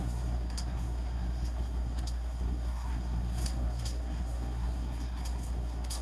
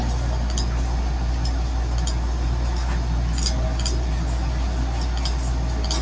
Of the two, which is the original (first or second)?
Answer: second